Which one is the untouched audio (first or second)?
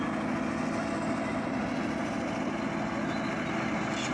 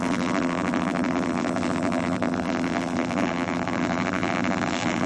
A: first